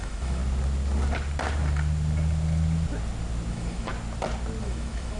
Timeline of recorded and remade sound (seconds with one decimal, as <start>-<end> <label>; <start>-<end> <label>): 0.0-0.4 remade; 0.4-3.5 recorded; 3.5-3.9 remade; 3.9-4.6 recorded; 4.6-5.2 remade